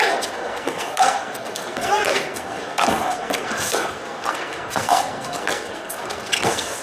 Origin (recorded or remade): remade